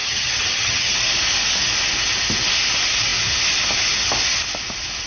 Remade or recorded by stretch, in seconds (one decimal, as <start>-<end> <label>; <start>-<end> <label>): 0.0-0.9 remade; 0.9-5.1 recorded